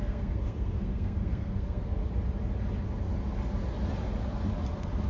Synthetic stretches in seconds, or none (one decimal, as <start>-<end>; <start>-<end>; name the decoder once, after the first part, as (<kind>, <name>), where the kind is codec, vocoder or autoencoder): 0.0-2.0 (codec, SNAC)